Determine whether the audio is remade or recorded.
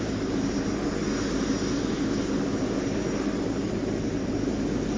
recorded